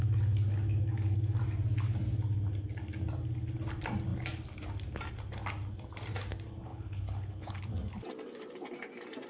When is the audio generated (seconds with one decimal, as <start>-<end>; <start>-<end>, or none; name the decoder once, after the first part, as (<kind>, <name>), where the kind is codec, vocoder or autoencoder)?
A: 6.7-7.6 (codec, HILCodec)